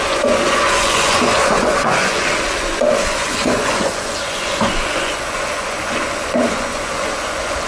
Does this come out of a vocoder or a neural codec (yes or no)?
yes